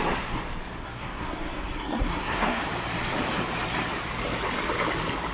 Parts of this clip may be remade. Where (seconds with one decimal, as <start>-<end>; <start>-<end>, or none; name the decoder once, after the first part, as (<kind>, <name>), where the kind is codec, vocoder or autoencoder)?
0.8-2.6 (codec, SNAC)